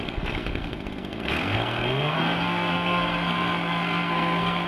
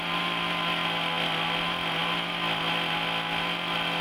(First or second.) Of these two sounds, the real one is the second